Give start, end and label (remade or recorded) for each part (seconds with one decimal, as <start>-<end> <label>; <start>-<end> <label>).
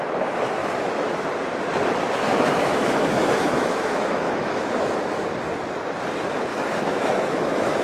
0.0-0.6 recorded; 0.6-1.1 remade; 1.1-2.3 recorded; 2.3-5.2 remade; 5.2-6.5 recorded; 6.5-7.8 remade